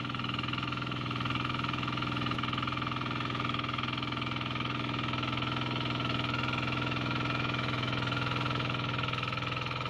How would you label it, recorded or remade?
remade